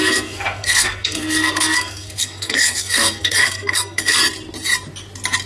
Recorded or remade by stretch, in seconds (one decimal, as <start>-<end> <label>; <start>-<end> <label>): 0.0-4.2 remade; 4.2-5.5 recorded